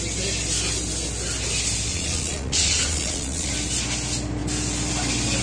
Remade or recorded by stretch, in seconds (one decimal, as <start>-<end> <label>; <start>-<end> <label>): 0.0-1.9 recorded; 1.9-3.5 remade; 3.5-5.4 recorded